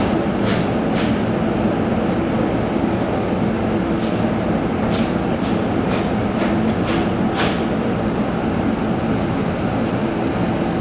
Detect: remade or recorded recorded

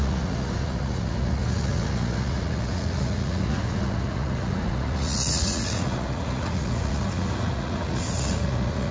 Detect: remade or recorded remade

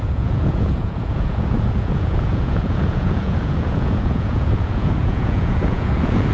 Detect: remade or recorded remade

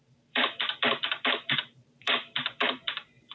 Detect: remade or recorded remade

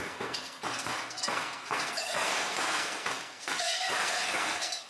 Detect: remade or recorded remade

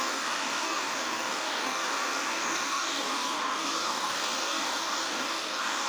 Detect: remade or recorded remade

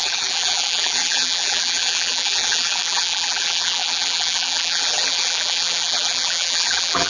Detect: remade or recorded remade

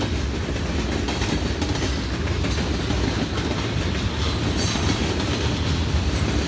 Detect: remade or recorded recorded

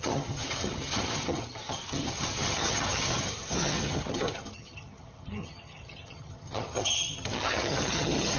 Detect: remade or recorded remade